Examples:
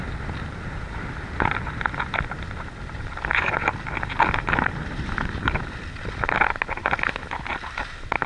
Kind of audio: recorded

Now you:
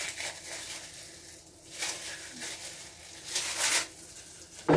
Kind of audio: recorded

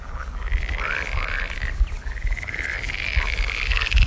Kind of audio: recorded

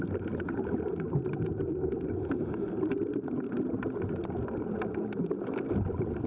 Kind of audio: recorded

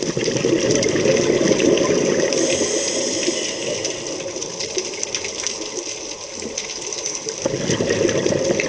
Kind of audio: recorded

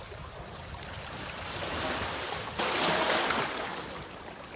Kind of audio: remade